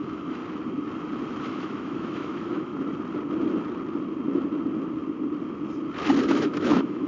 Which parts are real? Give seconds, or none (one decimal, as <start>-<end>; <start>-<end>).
0.4-1.4; 2.7-6.2